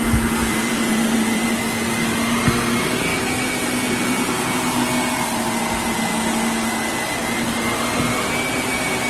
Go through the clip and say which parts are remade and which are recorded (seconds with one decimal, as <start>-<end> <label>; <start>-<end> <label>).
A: 0.0-0.4 recorded; 0.4-1.6 remade; 1.6-9.1 recorded